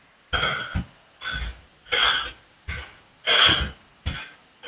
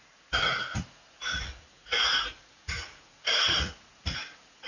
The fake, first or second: second